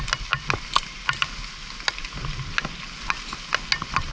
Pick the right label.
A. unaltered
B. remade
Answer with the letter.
A